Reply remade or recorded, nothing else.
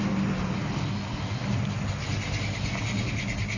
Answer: recorded